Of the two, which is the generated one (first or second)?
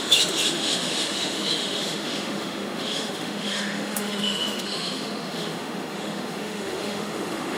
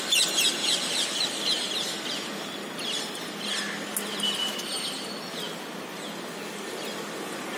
first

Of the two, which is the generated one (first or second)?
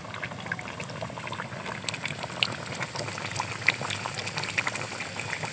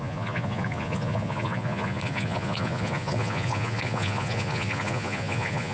second